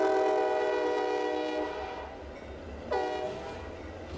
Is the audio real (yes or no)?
yes